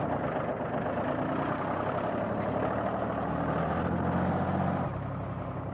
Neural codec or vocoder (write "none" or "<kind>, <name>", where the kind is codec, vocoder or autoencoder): none